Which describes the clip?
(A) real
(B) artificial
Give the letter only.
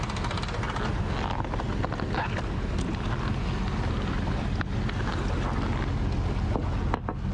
A